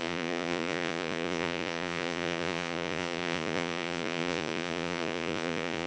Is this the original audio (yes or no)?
no